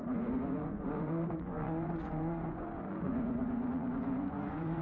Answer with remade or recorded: remade